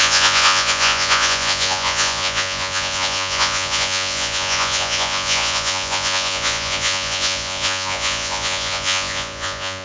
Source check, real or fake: fake